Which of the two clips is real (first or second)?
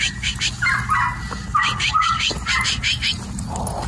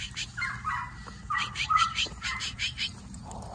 first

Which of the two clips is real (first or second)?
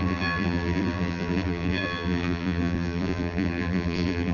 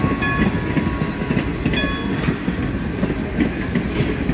second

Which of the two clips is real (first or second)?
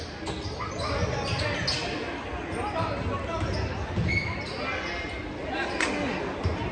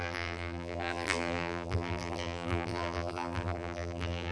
first